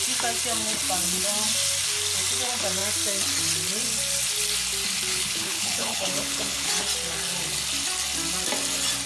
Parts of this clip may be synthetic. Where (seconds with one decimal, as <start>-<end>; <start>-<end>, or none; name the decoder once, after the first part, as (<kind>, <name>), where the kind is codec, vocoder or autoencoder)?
5.1-6.7 (codec, HILCodec)